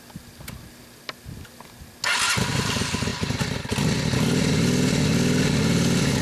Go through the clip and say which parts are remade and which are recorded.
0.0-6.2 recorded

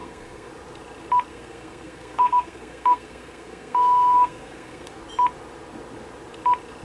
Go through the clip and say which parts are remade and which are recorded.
0.0-0.5 remade; 0.5-1.3 recorded; 1.3-5.0 remade; 5.0-6.8 recorded

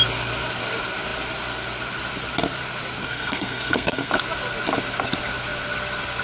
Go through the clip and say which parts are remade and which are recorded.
0.0-3.0 recorded; 3.0-4.1 remade; 4.1-6.2 recorded

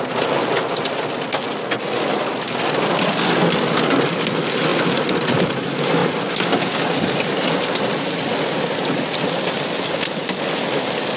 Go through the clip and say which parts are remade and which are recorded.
0.0-11.2 recorded